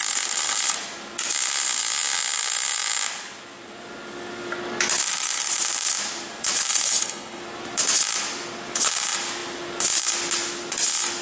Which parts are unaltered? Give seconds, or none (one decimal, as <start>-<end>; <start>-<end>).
0.0-6.7; 7.4-11.2